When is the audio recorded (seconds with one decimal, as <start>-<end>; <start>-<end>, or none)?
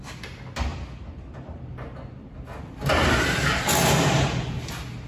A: 0.0-5.1